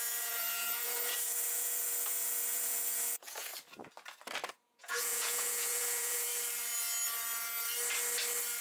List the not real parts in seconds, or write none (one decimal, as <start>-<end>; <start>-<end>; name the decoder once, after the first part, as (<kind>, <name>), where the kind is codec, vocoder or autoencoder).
0.0-3.5 (vocoder, Vocos); 4.5-6.3

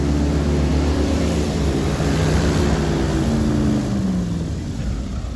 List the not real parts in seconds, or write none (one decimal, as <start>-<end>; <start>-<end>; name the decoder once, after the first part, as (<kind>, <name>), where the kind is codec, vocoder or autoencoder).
0.7-2.8 (vocoder, BigVGAN v2)

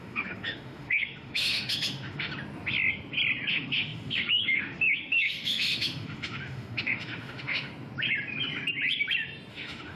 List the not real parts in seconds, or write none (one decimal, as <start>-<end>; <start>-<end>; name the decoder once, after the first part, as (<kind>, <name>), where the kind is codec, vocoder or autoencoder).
0.0-2.3 (autoencoder, DAC-VAE); 3.5-7.7; 9.5-10.0

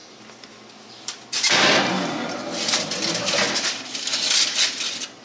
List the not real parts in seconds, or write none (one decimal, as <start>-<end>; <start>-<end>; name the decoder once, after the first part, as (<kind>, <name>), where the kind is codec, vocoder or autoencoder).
0.0-3.1 (vocoder, BigVGAN v2); 4.1-5.2

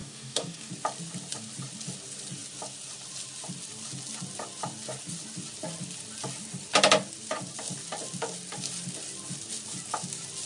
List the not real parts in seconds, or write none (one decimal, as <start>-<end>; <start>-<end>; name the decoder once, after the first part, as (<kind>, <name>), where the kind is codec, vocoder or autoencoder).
0.0-0.7 (codec, DAC)